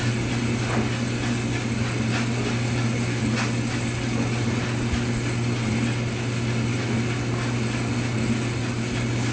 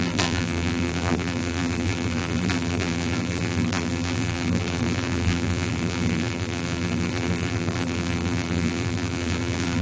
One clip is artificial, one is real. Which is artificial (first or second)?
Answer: second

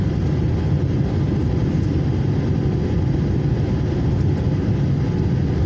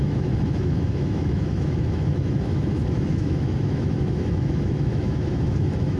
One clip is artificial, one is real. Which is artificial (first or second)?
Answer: second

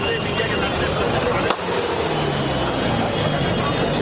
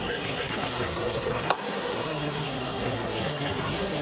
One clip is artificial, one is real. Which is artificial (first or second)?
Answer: second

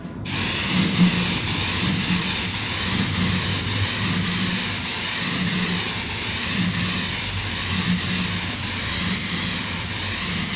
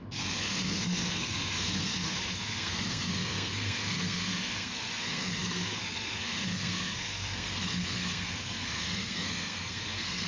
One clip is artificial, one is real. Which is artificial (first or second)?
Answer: second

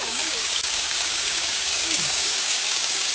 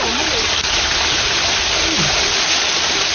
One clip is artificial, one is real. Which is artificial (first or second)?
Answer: first